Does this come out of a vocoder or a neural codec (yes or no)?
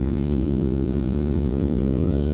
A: yes